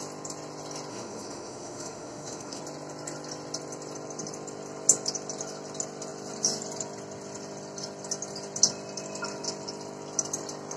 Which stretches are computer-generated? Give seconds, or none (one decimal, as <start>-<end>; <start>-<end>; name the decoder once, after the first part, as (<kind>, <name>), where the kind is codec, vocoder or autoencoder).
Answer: 0.9-2.6 (autoencoder, DAC-VAE)

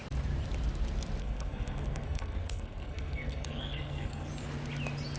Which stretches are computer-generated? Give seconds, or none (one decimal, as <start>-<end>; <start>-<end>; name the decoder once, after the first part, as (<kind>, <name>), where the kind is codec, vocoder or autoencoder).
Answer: 1.2-4.3 (codec, SNAC)

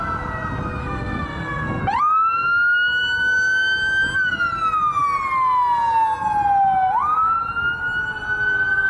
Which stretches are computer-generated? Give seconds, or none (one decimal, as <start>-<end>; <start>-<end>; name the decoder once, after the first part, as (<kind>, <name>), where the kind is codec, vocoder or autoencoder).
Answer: 0.8-1.8 (codec, SNAC)

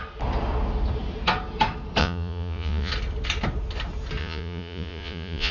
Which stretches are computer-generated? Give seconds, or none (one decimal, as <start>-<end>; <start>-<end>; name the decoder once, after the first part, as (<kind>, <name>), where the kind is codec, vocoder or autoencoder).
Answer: 2.0-2.9 (vocoder, Vocos); 4.2-5.5

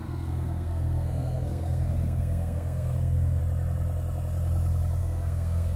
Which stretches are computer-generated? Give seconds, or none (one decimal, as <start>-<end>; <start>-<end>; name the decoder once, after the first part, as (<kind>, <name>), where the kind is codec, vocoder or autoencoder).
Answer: 0.0-3.4 (codec, SNAC); 5.0-5.8

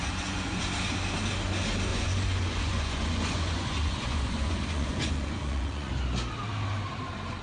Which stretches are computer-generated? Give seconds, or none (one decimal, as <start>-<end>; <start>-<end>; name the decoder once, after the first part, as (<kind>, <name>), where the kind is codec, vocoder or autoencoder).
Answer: 0.0-0.6 (vocoder, Vocos); 1.9-5.9

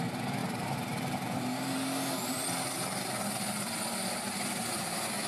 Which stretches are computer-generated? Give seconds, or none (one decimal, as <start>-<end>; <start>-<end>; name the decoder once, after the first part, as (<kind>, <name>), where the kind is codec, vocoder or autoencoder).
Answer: none

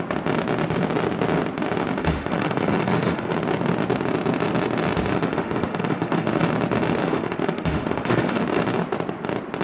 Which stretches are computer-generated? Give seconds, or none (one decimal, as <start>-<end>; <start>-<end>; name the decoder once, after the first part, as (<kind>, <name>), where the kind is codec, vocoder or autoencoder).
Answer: 2.0-3.3 (autoencoder, DAC-VAE); 5.1-6.4; 7.0-8.4